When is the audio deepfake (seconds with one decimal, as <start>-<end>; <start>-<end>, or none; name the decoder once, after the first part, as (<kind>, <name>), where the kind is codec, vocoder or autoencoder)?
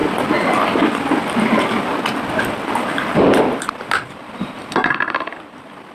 3.4-5.9 (vocoder, BigVGAN v2)